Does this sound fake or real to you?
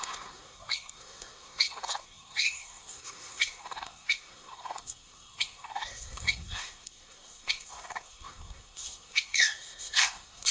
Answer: fake